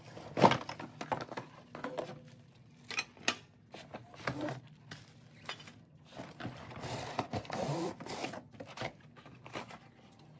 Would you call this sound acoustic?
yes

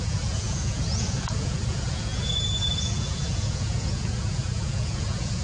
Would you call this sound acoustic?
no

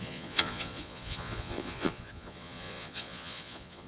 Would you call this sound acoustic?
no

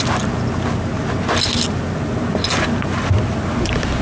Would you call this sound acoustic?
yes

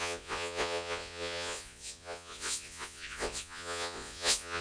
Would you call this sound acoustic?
no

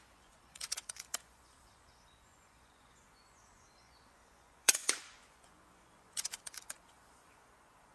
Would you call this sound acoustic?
no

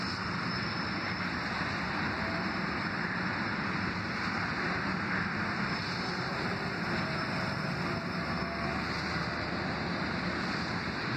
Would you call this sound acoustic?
yes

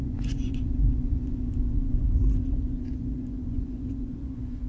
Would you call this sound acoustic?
no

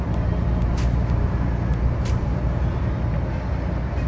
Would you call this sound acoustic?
yes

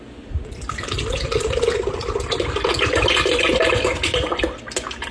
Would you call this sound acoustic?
yes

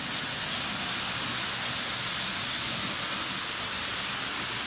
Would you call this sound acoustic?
yes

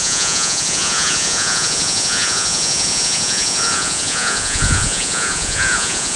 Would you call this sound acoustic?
no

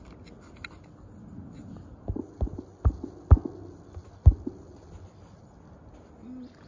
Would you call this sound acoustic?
yes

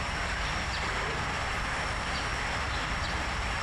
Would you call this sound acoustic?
yes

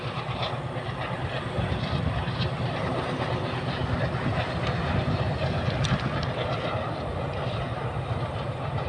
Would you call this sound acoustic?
yes